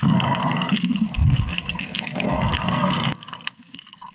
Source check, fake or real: fake